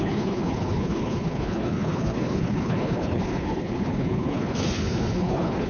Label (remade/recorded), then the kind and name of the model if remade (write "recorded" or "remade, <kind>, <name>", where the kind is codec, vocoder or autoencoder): remade, codec, HILCodec